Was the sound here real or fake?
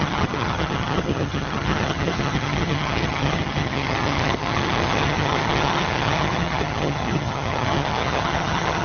fake